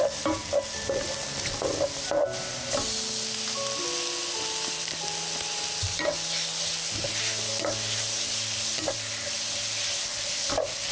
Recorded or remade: recorded